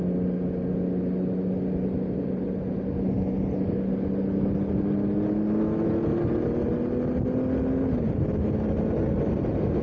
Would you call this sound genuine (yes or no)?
yes